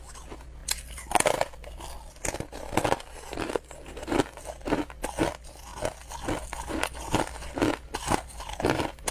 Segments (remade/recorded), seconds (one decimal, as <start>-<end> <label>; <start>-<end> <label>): 0.0-9.1 recorded